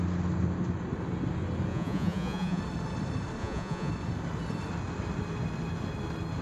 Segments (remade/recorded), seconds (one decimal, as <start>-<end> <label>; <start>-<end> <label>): 0.0-1.7 recorded; 1.7-2.6 remade; 2.6-3.4 recorded; 3.4-3.9 remade; 3.9-6.4 recorded